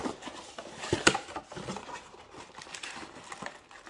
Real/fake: real